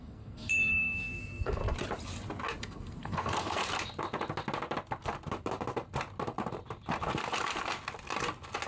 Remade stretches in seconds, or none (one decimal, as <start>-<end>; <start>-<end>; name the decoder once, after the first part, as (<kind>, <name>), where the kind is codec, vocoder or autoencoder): 0.0-1.6 (codec, SNAC); 2.6-3.6